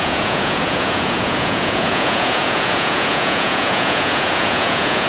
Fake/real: fake